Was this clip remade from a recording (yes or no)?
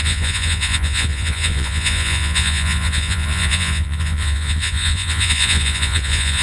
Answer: yes